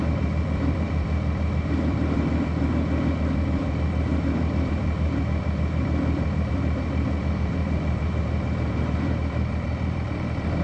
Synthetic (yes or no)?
yes